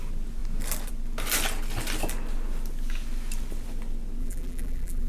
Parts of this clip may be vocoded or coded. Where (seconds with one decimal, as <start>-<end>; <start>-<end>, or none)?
4.2-5.1